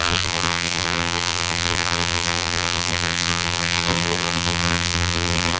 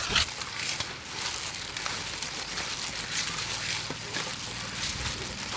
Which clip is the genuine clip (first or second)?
second